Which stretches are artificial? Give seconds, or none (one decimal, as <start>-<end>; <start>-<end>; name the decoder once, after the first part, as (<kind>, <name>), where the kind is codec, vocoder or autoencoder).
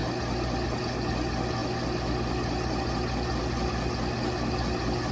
none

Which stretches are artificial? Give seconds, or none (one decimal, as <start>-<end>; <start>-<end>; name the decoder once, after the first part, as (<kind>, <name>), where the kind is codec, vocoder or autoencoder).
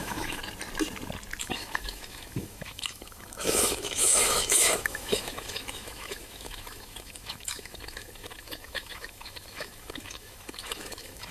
0.0-0.4 (autoencoder, DAC-VAE); 1.4-11.3